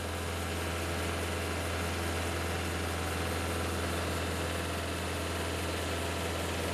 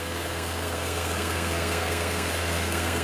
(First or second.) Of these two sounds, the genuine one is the first